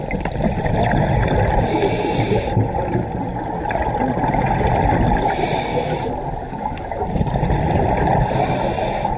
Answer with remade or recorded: recorded